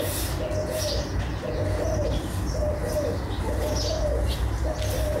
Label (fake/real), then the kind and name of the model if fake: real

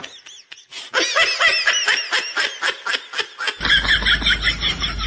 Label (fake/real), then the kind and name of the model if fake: real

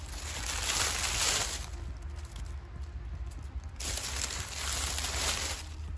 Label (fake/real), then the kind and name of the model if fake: real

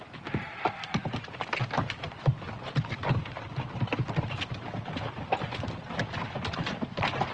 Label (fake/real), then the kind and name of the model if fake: fake, vocoder, BigVGAN v2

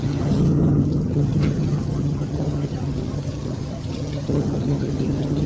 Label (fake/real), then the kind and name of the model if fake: fake, vocoder, HiFi-GAN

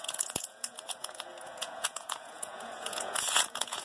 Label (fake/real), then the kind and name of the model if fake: fake, vocoder, Vocos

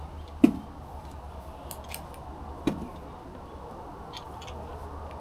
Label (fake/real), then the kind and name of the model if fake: real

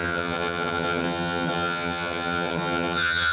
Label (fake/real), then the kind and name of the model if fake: fake, vocoder, HiFi-GAN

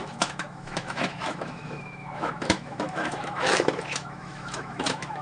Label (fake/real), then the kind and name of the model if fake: fake, autoencoder, DAC-VAE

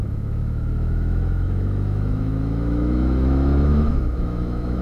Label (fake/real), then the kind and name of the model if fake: fake, autoencoder, DAC-VAE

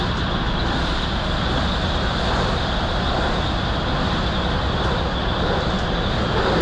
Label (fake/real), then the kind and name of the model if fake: real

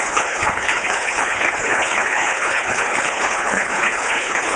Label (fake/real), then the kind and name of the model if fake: fake, codec, HILCodec